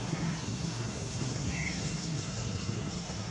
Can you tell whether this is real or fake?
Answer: fake